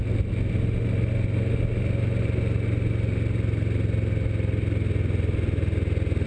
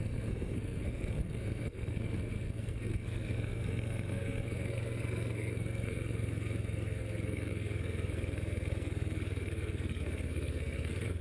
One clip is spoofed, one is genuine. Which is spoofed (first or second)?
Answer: second